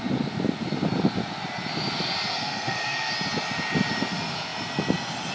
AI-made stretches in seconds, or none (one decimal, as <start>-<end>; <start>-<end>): 2.3-3.1